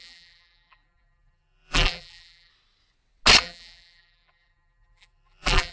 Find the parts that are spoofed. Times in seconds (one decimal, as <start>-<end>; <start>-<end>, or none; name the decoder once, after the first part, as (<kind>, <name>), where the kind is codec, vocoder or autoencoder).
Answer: 0.0-2.5 (vocoder, BigVGAN v2); 3.4-5.7